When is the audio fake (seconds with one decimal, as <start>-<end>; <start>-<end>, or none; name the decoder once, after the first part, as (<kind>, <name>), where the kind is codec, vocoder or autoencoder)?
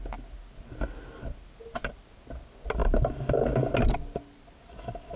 none